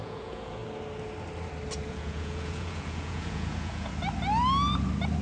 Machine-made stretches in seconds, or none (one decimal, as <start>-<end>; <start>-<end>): 0.0-0.6; 1.9-3.9